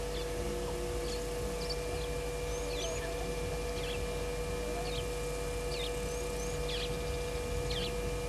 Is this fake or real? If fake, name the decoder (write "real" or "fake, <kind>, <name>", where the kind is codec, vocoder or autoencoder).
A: real